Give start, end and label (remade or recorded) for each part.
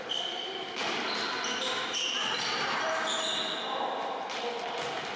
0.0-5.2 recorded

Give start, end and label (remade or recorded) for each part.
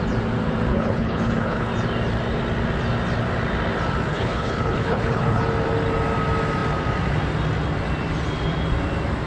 0.0-0.7 recorded; 0.7-1.7 remade; 1.7-4.1 recorded; 4.1-5.4 remade; 5.4-9.3 recorded